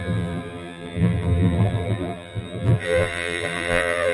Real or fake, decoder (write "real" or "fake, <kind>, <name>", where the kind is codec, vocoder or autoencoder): fake, vocoder, BigVGAN v2